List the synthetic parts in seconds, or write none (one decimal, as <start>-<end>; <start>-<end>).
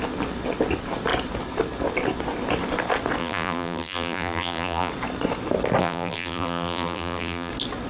3.2-4.9; 5.8-7.5